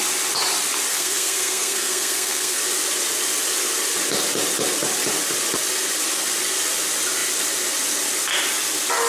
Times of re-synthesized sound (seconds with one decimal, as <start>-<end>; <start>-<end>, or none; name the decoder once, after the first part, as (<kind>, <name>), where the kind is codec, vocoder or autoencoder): 0.9-2.6 (codec, SNAC)